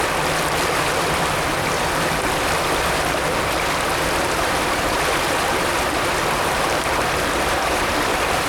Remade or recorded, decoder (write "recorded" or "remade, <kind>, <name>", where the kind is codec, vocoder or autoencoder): remade, vocoder, BigVGAN v2